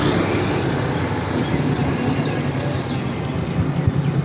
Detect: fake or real real